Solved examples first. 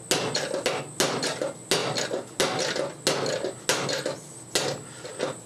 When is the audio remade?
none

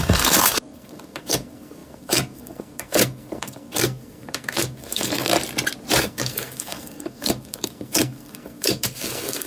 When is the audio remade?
0.0-5.3 (codec, SNAC); 6.0-9.5

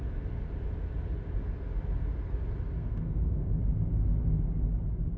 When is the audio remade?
2.8-3.6 (codec, SNAC)

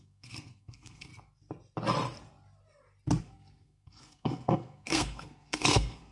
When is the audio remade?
0.0-1.1 (codec, SNAC); 3.2-6.1

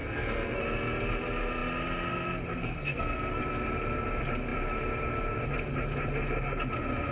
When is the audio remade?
0.0-0.6 (codec, SNAC); 2.6-3.4

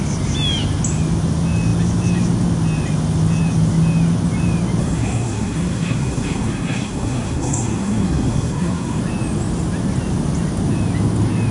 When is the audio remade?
4.8-9.0 (codec, SNAC)

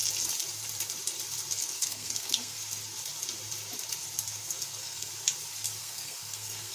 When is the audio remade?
1.6-2.6 (codec, SNAC); 4.4-5.1; 5.8-6.7

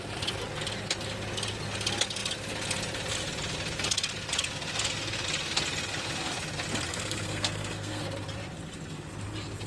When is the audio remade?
6.9-8.0 (codec, SNAC)